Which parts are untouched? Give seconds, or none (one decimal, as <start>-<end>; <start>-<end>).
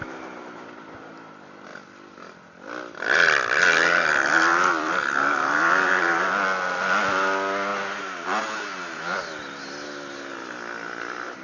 0.0-1.7; 4.9-11.4